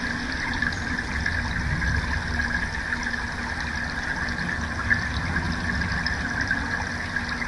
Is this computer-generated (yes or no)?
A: no